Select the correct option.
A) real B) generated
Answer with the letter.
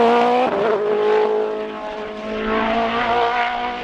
A